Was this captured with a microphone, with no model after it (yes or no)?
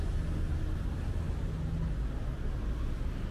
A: yes